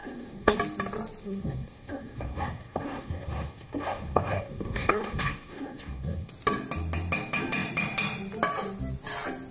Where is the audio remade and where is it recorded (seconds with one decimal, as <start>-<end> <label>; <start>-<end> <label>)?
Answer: 0.0-0.6 remade; 0.6-1.2 recorded; 1.2-6.3 remade; 6.3-9.5 recorded